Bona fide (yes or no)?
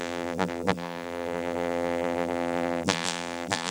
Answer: no